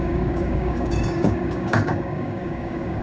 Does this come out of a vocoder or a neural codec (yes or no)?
yes